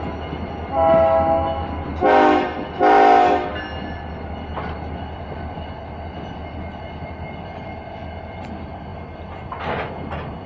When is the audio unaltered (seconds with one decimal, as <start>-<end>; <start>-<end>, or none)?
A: 0.0-10.5